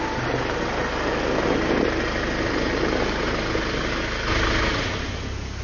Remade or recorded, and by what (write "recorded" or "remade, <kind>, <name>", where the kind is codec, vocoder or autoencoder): recorded